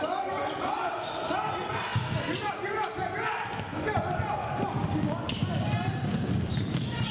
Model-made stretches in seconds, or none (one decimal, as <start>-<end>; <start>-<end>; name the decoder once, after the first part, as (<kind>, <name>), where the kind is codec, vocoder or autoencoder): none